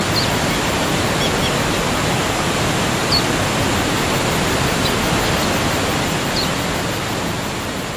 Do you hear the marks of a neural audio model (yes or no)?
no